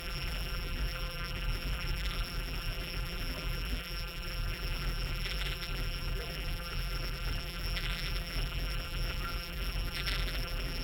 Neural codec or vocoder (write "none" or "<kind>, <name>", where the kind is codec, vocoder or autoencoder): vocoder, BigVGAN v2